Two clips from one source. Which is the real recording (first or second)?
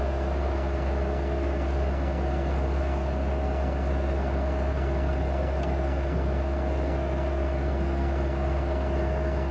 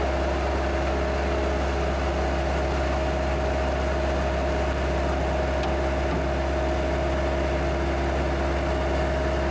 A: second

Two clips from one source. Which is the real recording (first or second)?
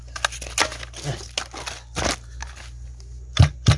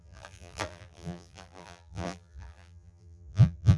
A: first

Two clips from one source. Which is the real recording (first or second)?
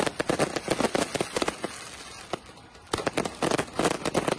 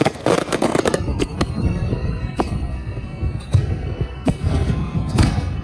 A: first